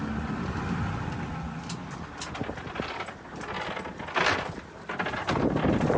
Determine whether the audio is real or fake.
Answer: real